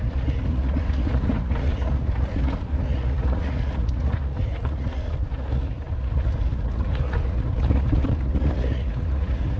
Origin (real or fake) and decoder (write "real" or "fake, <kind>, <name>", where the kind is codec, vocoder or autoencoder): fake, vocoder, Vocos